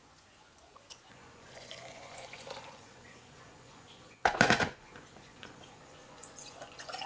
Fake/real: fake